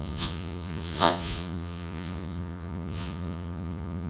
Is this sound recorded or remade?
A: remade